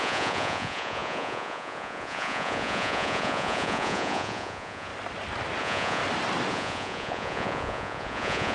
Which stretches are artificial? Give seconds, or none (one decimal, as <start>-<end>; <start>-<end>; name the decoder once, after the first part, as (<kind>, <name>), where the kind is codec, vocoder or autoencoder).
0.0-4.9 (vocoder, Vocos); 5.6-6.0; 6.5-8.5